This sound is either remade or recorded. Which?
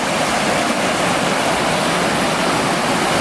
recorded